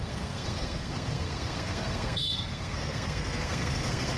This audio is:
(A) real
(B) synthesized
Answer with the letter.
B